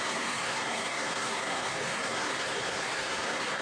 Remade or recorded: remade